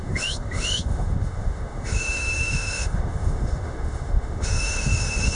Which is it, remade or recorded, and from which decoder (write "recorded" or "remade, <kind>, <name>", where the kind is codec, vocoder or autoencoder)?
remade, autoencoder, DAC-VAE